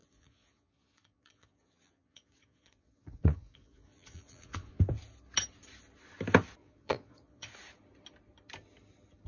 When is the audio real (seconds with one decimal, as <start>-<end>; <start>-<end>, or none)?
4.8-6.6; 7.5-9.3